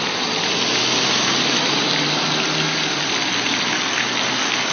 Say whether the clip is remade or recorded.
recorded